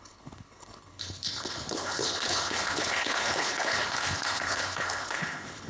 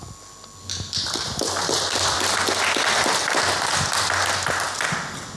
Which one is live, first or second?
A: second